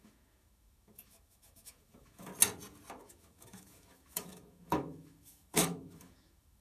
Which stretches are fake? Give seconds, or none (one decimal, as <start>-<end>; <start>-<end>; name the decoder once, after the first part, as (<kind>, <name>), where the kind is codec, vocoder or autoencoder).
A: 0.0-2.3 (autoencoder, DAC-VAE); 3.0-6.6